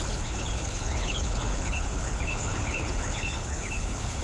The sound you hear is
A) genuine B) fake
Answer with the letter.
B